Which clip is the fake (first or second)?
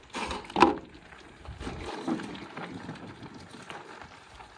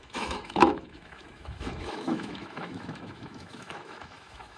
second